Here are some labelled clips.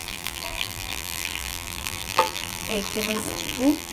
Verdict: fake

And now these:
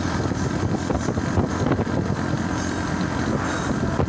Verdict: real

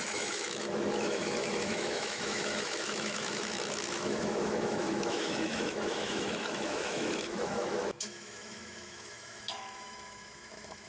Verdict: fake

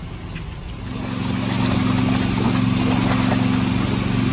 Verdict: real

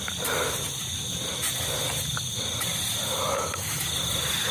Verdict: real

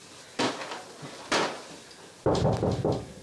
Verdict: real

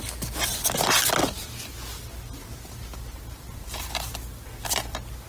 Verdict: real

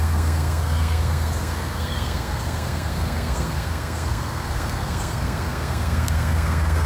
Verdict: fake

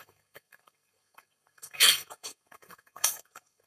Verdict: fake